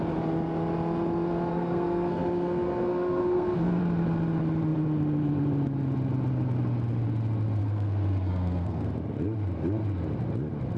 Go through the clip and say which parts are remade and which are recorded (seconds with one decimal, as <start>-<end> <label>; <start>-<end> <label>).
0.0-1.5 recorded; 1.5-3.8 remade; 3.8-7.6 recorded; 7.6-8.9 remade; 8.9-10.8 recorded